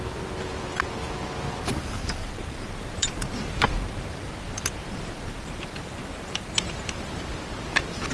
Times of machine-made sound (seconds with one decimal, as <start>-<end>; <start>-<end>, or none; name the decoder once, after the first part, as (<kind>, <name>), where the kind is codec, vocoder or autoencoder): 2.2-4.3 (vocoder, BigVGAN v2); 4.8-7.1